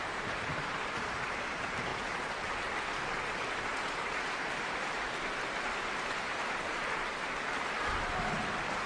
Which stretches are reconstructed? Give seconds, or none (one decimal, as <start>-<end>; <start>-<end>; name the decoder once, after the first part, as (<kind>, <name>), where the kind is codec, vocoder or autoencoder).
0.0-1.9 (vocoder, BigVGAN v2); 3.6-8.9